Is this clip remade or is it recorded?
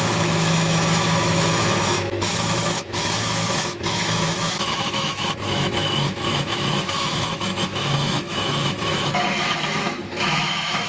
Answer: remade